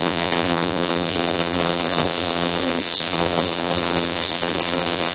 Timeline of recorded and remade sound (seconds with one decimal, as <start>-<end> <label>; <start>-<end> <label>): 0.0-5.1 remade